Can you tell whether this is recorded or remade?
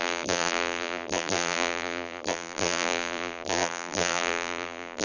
remade